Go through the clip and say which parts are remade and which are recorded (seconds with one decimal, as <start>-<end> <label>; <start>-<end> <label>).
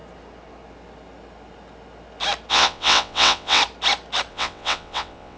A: 0.0-2.5 recorded; 2.5-3.6 remade; 3.6-4.3 recorded; 4.3-5.4 remade